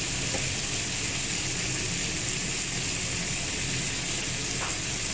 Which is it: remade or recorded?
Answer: recorded